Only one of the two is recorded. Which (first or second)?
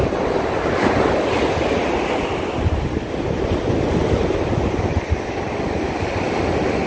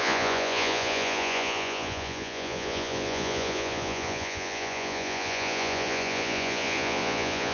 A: first